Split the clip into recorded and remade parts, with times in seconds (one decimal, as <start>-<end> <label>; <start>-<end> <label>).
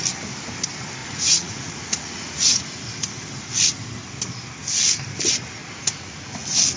0.0-1.0 recorded; 1.0-2.8 remade; 2.8-5.6 recorded; 5.6-6.2 remade; 6.2-6.8 recorded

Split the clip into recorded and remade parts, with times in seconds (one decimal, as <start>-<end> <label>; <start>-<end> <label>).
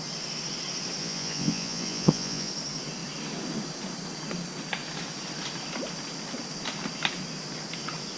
0.0-1.0 recorded; 1.0-2.5 remade; 2.5-8.2 recorded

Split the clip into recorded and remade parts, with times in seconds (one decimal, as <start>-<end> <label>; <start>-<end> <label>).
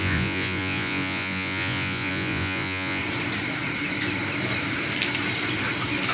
0.0-3.0 remade; 3.0-6.1 recorded